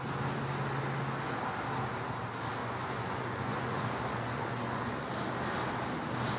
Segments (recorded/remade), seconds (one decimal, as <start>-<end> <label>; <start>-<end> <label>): 0.0-2.6 recorded; 2.6-5.1 remade; 5.1-6.4 recorded